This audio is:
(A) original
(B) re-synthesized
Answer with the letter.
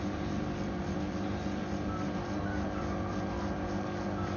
A